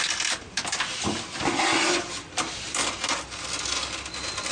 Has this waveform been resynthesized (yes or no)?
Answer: no